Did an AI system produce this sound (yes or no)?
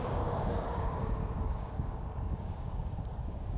yes